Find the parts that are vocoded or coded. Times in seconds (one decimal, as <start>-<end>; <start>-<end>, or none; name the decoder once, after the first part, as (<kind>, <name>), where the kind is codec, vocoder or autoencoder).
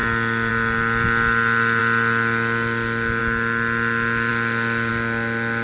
none